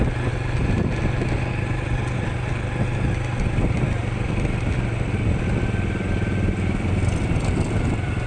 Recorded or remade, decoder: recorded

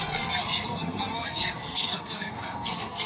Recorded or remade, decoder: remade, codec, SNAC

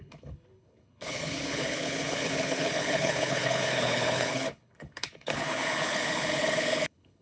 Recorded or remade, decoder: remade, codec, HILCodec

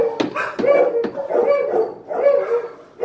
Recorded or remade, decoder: recorded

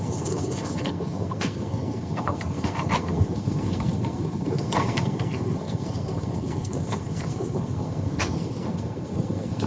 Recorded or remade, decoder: remade, codec, SNAC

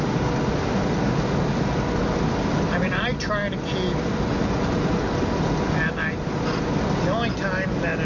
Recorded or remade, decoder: recorded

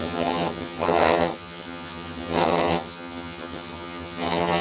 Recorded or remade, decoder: remade, vocoder, HiFi-GAN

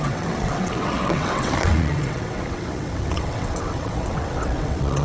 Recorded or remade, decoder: remade, vocoder, WaveNeXt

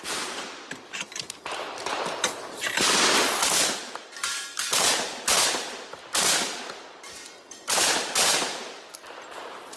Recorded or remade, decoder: remade, vocoder, BigVGAN v2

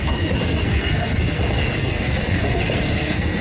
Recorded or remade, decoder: remade, codec, SNAC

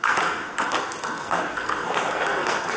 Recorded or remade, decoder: remade, codec, SNAC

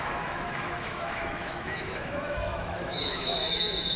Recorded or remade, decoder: remade, autoencoder, DAC-VAE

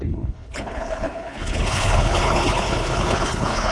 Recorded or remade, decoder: remade, codec, HILCodec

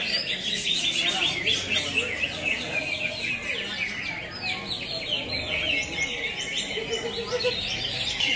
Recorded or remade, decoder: recorded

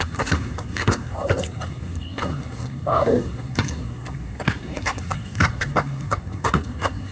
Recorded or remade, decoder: remade, codec, SNAC